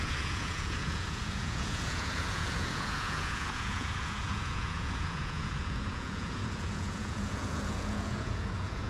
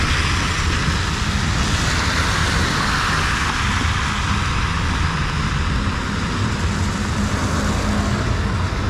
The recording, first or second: second